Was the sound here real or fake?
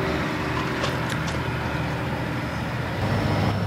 real